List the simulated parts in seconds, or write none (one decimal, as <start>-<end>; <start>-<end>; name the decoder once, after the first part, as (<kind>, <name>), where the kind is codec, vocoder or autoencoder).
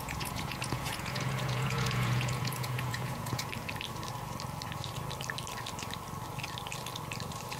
0.0-3.5 (vocoder, Vocos)